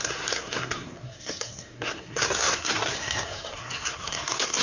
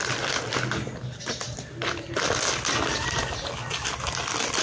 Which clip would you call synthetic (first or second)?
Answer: first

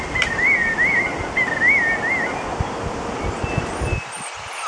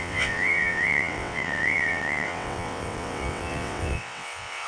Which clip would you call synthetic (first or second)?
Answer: second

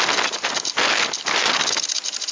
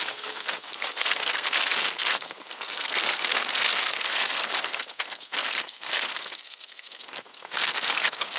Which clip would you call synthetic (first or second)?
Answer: second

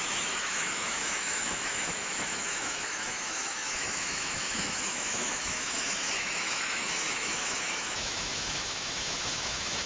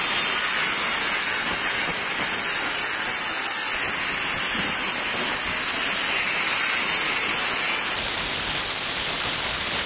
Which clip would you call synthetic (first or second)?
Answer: first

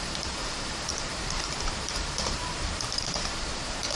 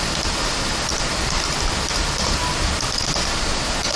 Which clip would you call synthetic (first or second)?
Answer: first